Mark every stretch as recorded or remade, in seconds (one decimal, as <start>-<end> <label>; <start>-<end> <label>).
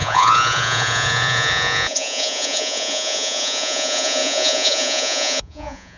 0.0-6.0 remade